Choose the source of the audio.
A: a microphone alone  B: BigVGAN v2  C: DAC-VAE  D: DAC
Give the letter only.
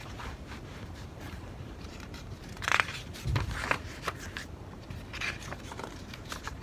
B